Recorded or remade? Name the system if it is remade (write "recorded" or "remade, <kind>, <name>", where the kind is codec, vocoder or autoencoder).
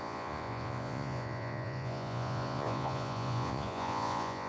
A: remade, vocoder, Vocos